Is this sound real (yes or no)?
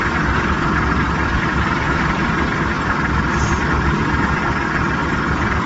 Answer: yes